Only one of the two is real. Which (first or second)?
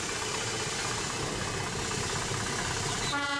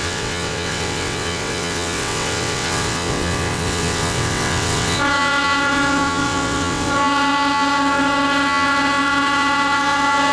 first